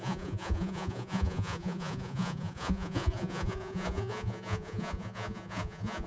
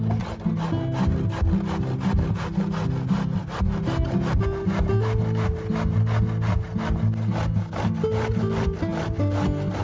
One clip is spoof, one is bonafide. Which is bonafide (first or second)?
second